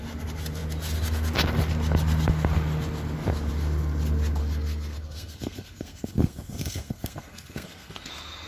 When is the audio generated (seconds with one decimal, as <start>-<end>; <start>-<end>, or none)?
4.4-8.1

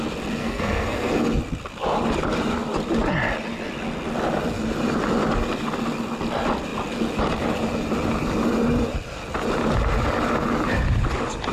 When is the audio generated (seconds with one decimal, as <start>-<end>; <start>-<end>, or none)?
0.4-1.1